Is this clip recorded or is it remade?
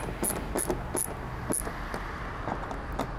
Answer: recorded